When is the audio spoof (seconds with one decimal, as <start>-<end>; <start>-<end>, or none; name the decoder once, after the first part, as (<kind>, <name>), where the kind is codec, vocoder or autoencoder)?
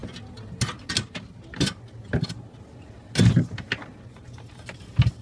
none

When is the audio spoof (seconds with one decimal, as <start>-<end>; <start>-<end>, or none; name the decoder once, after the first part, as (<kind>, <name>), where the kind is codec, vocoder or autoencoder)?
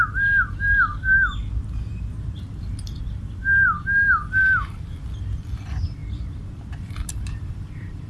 none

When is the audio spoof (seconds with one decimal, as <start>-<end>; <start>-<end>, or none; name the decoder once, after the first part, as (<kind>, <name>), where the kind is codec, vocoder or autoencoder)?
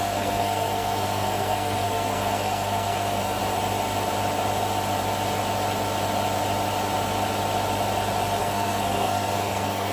0.0-3.4 (codec, SNAC); 8.4-9.9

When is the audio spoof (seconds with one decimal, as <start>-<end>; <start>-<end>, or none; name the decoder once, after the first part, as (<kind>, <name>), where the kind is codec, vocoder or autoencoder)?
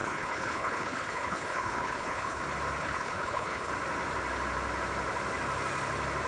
0.0-2.4 (codec, HILCodec); 2.8-3.7